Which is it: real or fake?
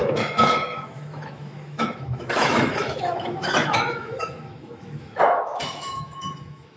fake